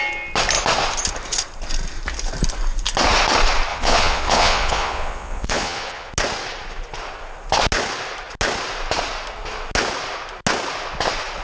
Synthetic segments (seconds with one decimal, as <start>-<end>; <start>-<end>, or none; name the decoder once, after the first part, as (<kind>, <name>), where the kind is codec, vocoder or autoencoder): 3.7-6.1 (vocoder, Vocos)